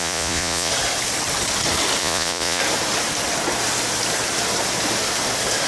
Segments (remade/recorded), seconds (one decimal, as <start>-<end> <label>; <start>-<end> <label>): 0.0-0.7 remade; 0.7-2.0 recorded; 2.0-2.6 remade; 2.6-5.7 recorded